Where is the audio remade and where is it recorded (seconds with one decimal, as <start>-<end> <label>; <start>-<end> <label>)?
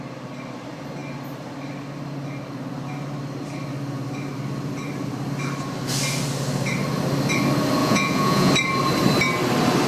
0.0-7.8 recorded; 7.8-8.5 remade; 8.5-9.9 recorded